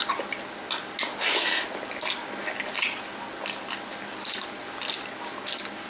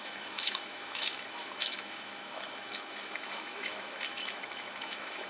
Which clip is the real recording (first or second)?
first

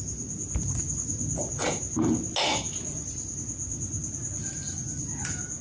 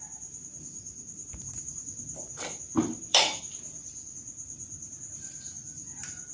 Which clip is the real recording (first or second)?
first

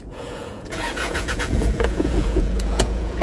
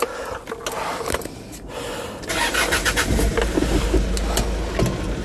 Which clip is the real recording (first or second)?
second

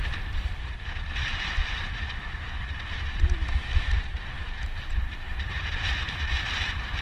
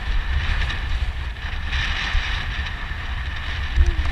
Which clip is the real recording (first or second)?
second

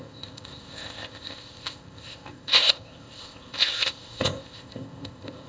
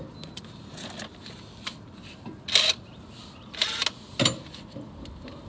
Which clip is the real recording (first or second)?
second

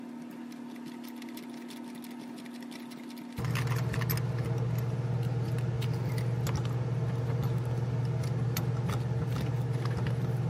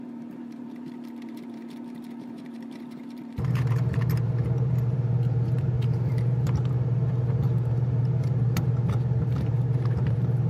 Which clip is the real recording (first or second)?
first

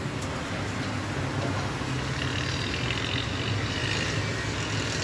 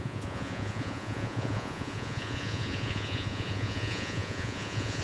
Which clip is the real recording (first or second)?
first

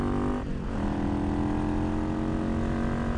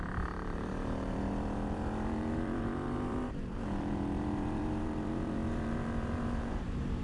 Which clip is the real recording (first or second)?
first